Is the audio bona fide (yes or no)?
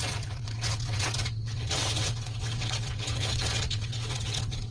no